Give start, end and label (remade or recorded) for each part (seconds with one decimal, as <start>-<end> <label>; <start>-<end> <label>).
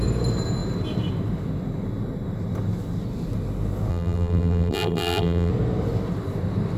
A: 0.0-3.9 recorded; 3.9-5.5 remade; 5.5-6.8 recorded